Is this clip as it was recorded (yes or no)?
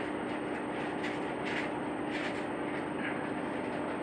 yes